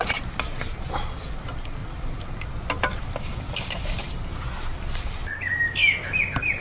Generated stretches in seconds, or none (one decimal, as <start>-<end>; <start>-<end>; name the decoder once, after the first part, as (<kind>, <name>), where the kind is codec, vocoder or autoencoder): 1.8-2.5 (vocoder, BigVGAN v2); 2.9-4.4